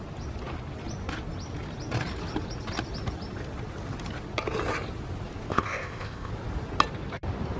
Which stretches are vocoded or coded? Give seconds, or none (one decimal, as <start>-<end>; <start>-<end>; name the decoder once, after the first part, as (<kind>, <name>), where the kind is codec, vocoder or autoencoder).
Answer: 5.5-6.3 (codec, ZipCodec)